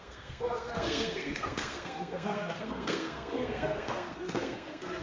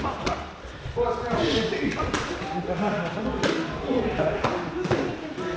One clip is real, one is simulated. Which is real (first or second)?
second